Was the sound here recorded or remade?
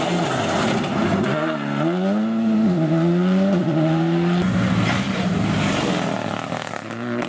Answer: recorded